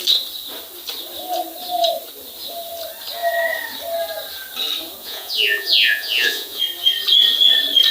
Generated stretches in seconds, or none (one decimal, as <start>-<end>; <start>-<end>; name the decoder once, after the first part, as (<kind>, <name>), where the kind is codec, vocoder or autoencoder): 5.0-6.6 (vocoder, Vocos)